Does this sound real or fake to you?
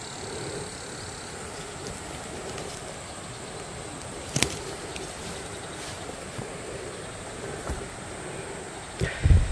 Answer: real